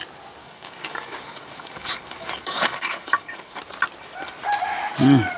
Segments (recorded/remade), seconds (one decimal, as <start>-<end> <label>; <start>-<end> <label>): 0.0-0.4 recorded; 0.4-3.6 remade; 3.6-5.4 recorded

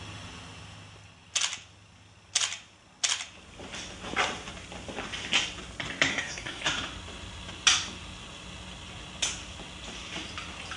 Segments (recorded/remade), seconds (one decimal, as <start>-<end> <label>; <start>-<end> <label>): 0.0-6.1 recorded; 6.1-6.6 remade; 6.6-10.8 recorded

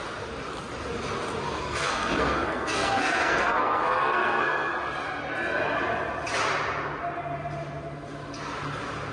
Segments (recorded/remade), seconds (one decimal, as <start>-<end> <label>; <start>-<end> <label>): 0.0-1.5 recorded; 1.5-4.7 remade; 4.7-9.1 recorded

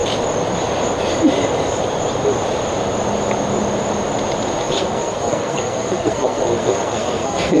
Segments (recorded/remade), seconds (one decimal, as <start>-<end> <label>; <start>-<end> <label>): 0.0-4.6 recorded; 4.6-7.6 remade

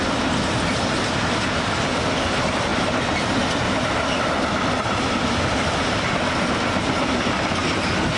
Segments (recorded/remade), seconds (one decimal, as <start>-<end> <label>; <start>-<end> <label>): 0.0-8.2 recorded

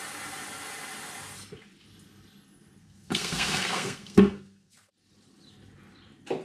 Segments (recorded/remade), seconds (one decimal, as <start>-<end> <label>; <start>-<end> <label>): 0.0-2.8 recorded; 2.8-4.9 remade; 4.9-6.4 recorded